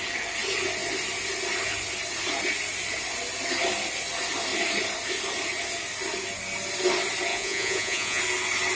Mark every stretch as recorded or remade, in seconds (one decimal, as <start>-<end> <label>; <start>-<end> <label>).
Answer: 0.0-7.3 recorded; 7.3-8.2 remade; 8.2-8.7 recorded